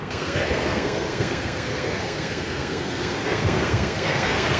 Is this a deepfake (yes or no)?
yes